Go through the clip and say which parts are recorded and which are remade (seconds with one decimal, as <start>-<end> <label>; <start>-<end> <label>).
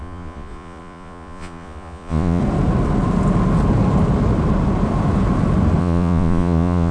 0.0-2.4 remade; 2.4-5.8 recorded; 5.8-6.9 remade